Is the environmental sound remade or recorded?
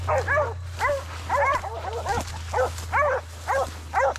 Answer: recorded